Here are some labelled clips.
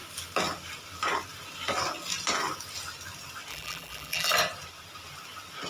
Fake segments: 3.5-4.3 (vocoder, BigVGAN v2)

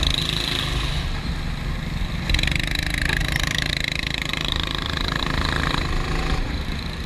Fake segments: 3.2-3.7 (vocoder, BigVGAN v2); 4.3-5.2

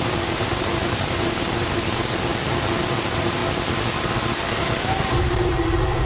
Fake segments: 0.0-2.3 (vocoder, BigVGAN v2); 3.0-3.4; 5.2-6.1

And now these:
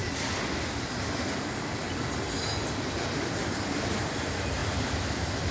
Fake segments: 4.6-5.5 (vocoder, BigVGAN v2)

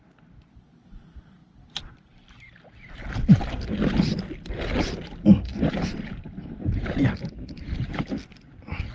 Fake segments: 1.4-2.1 (vocoder, BigVGAN v2); 5.5-6.9

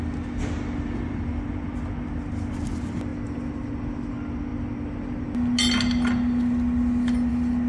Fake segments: none